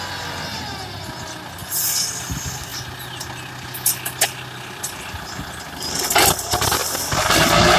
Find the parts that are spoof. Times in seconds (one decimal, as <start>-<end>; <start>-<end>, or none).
none

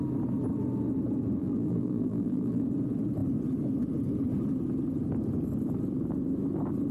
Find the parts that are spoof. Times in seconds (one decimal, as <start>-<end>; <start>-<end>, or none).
1.4-2.6

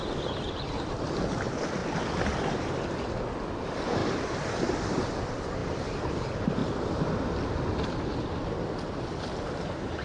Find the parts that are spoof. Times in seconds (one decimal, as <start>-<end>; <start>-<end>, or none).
4.0-4.9

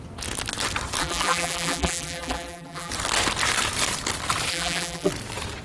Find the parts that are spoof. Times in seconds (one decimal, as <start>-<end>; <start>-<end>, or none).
1.0-2.9; 4.5-5.1

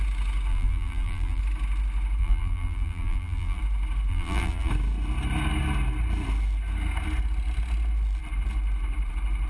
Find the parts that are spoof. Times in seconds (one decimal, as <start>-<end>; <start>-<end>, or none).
0.5-1.4; 2.2-3.6; 4.1-4.7